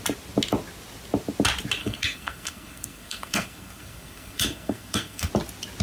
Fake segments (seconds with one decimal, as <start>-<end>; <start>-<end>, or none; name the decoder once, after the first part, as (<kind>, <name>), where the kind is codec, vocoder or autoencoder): 1.8-5.3 (codec, SNAC)